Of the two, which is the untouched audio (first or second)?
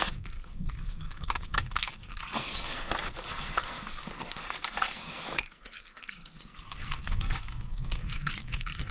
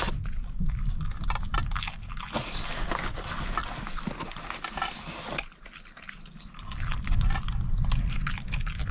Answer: second